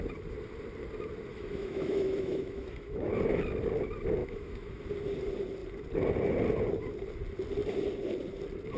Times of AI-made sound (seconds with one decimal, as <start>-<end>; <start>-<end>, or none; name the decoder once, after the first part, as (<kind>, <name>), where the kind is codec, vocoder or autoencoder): 1.3-3.1 (autoencoder, DAC-VAE); 4.2-4.8